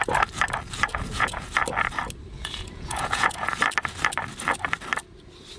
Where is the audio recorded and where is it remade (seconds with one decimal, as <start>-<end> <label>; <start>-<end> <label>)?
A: 0.0-0.9 recorded; 0.9-1.5 remade; 1.5-2.3 recorded; 2.3-3.6 remade; 3.6-5.6 recorded